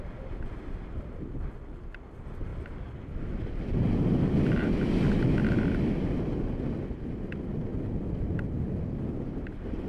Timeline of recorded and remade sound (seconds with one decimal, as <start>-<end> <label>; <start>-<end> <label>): 0.0-9.9 recorded